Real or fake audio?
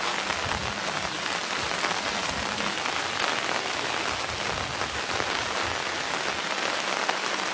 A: real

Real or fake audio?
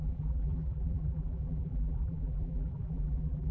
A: fake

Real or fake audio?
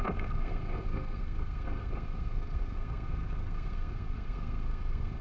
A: fake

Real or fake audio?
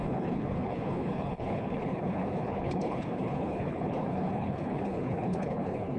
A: fake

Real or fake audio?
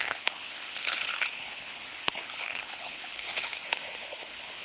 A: fake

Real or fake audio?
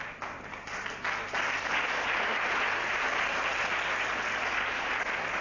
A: real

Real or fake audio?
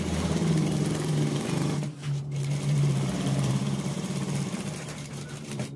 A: fake